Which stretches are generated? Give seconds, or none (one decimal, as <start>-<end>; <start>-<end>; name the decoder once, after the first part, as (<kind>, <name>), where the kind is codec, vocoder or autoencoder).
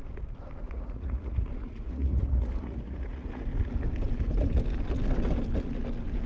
0.6-3.4 (vocoder, Vocos)